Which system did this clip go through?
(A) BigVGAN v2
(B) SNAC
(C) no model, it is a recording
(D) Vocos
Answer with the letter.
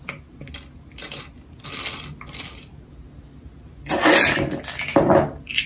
C